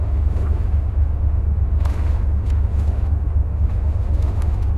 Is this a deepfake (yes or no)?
yes